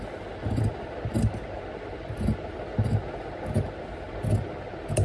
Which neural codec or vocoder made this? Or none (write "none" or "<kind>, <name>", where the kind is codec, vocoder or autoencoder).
none